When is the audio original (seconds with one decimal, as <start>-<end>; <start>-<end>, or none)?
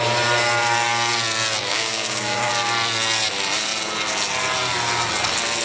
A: 0.0-1.7; 2.5-5.6